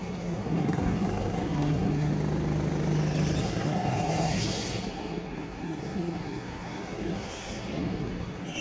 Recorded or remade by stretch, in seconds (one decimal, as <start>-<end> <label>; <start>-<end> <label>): 0.0-2.1 remade; 2.1-3.4 recorded; 3.4-8.6 remade